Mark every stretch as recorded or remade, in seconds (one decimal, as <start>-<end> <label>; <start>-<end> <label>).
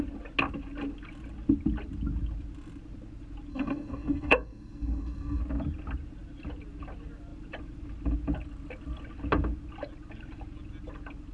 0.0-3.5 recorded; 3.5-5.4 remade; 5.4-11.3 recorded